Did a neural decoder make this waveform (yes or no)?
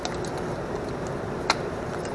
no